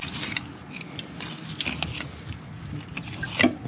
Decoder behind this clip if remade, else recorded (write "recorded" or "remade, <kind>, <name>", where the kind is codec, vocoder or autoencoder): recorded